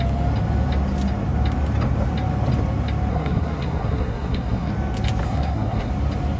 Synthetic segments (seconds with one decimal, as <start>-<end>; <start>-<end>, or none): 3.1-4.7; 5.2-5.9